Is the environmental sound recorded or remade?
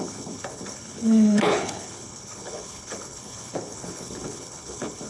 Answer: remade